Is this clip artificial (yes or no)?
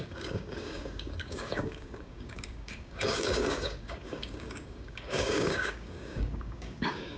yes